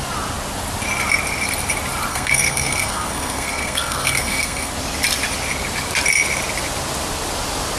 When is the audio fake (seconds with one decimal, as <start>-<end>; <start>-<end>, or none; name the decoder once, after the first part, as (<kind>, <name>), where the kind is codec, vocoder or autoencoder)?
2.1-4.7 (codec, SNAC)

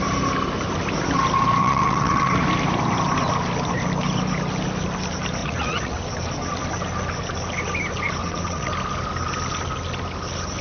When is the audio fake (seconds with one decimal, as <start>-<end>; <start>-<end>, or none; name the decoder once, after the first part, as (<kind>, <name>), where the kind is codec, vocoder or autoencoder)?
1.6-2.3 (vocoder, WaveNeXt); 5.4-6.0; 8.2-8.7

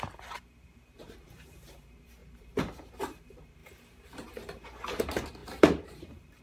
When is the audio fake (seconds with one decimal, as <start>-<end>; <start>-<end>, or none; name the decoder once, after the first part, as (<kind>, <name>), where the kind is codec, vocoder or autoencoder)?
0.0-6.4 (vocoder, BigVGAN v2)